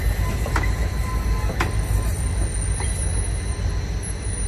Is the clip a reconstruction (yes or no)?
yes